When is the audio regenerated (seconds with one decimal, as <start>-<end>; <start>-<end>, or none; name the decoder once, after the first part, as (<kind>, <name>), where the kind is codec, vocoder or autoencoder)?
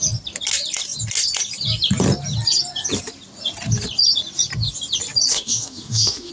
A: 5.3-6.3 (autoencoder, DAC-VAE)